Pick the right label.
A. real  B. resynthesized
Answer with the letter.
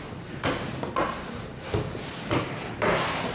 A